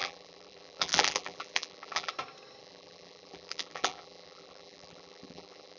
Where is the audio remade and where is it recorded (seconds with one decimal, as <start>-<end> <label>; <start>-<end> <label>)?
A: 0.0-2.1 remade; 2.1-2.6 recorded; 2.6-5.8 remade